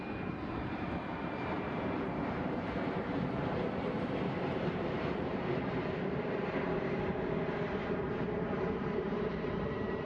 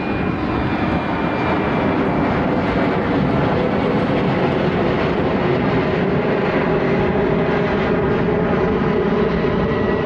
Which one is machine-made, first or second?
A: first